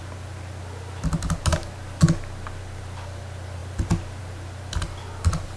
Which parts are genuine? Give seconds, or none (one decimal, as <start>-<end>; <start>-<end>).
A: 0.0-5.6